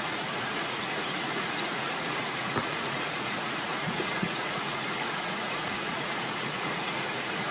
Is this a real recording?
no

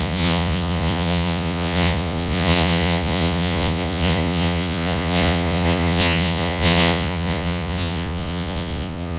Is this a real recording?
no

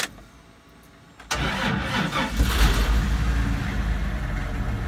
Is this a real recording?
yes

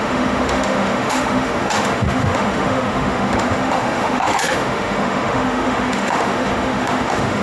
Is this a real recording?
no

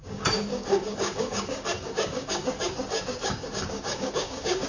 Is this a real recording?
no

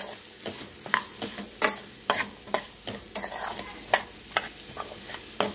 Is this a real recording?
yes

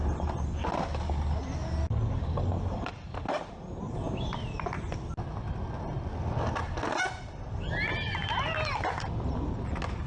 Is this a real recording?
yes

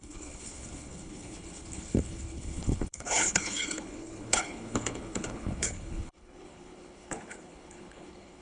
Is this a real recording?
no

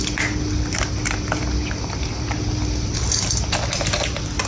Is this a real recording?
yes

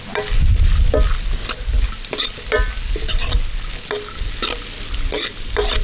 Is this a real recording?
yes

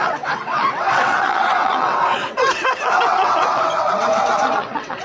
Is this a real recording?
no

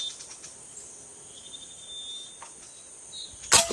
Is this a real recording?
yes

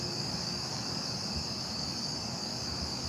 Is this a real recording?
no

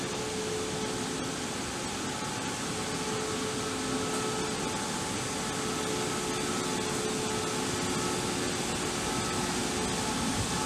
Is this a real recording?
yes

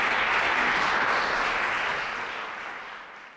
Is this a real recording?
yes